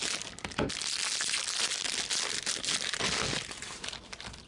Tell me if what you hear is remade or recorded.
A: recorded